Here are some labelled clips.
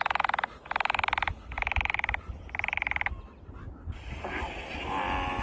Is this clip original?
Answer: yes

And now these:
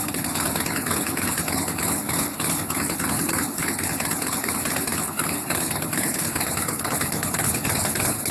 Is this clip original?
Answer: no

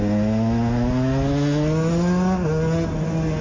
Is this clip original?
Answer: yes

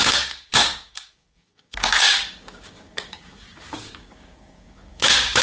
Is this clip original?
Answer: no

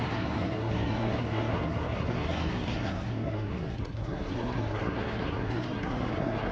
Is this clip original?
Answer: no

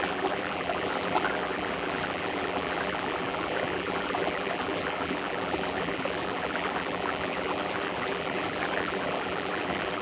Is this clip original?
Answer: no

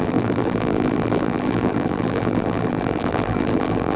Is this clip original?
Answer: no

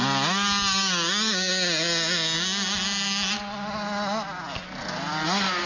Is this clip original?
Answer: yes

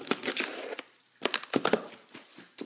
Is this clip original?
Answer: yes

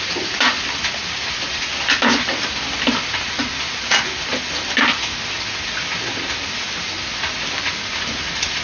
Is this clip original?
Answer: yes